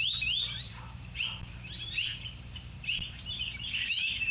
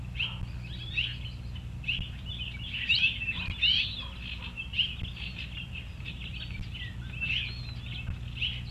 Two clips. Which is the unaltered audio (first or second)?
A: second